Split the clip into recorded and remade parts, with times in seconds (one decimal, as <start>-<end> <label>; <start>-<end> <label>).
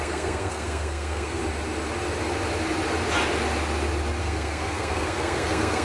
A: 0.0-1.4 remade; 1.4-4.2 recorded; 4.2-5.8 remade